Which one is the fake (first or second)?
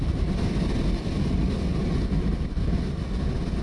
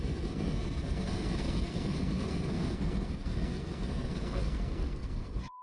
second